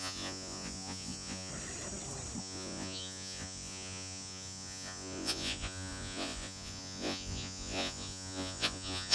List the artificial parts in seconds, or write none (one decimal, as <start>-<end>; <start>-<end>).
0.0-1.5; 2.4-9.1